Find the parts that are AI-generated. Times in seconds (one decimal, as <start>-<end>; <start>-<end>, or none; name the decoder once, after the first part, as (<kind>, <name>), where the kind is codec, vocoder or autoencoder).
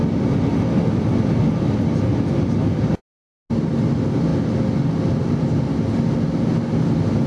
none